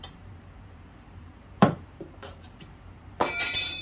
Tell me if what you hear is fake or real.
fake